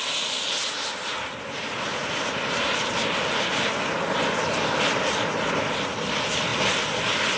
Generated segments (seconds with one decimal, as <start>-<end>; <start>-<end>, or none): none